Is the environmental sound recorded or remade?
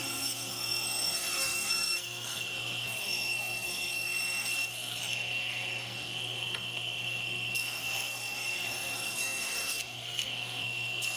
remade